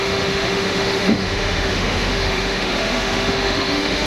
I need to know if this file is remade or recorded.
remade